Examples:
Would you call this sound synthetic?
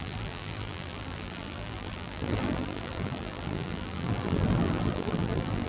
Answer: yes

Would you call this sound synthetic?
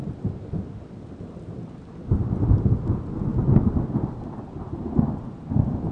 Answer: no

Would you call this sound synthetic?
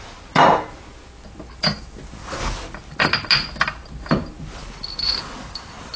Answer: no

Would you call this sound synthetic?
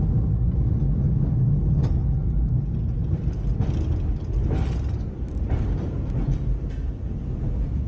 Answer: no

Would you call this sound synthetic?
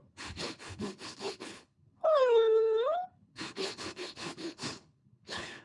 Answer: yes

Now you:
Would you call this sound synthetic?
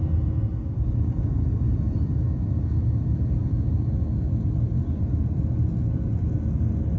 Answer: no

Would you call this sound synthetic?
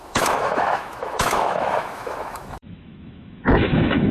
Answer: yes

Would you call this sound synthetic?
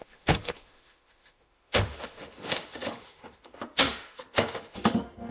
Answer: yes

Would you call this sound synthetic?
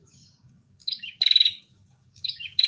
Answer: yes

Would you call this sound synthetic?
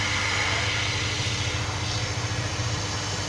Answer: no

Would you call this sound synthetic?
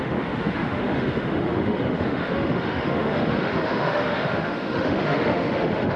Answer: yes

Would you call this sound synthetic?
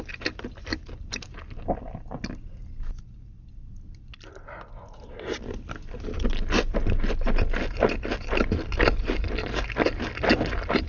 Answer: no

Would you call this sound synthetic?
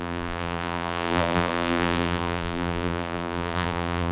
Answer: yes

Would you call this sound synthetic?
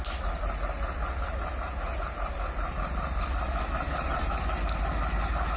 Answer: no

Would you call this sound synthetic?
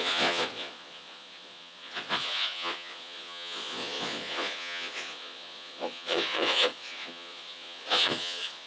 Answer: yes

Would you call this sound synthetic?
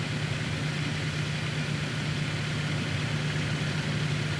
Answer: no